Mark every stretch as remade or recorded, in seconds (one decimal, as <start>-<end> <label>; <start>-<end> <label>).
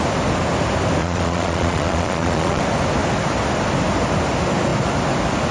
0.0-1.0 recorded; 1.0-2.6 remade; 2.6-5.5 recorded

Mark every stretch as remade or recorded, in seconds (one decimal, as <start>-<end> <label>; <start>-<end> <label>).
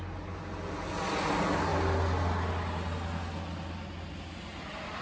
0.0-5.0 recorded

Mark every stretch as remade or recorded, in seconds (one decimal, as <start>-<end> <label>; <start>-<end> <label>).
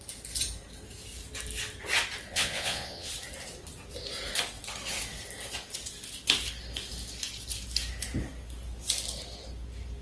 0.0-2.3 recorded; 2.3-3.1 remade; 3.1-10.0 recorded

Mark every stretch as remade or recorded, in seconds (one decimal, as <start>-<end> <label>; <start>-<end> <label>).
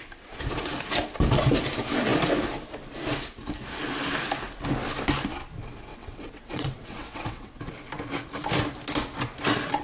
0.0-5.9 recorded; 5.9-7.7 remade; 7.7-9.8 recorded